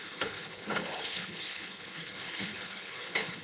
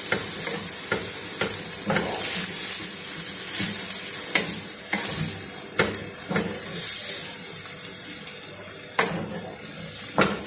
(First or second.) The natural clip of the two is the second